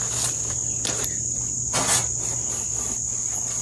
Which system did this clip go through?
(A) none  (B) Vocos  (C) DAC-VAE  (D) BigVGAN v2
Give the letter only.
A